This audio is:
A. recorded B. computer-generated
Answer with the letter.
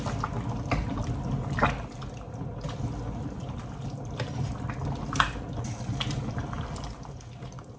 A